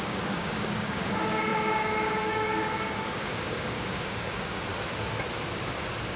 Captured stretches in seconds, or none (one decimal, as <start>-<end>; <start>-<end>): 4.7-5.7